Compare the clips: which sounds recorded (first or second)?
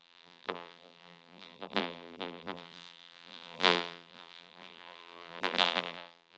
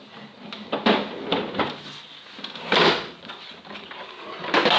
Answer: second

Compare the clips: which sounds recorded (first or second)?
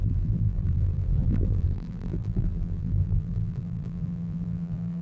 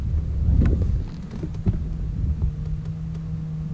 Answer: second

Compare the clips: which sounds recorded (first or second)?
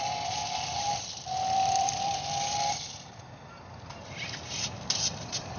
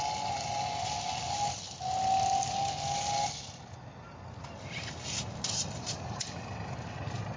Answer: second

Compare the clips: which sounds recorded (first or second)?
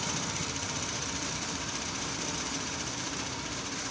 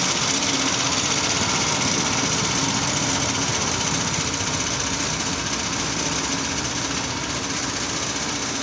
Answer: second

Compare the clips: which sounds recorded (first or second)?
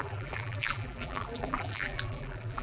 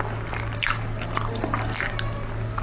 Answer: second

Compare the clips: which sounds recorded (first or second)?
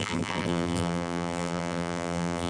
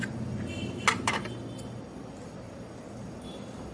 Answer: second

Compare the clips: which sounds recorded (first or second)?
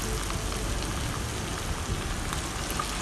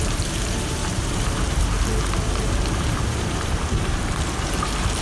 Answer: first